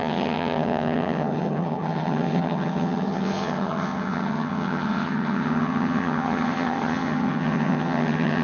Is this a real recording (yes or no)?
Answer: no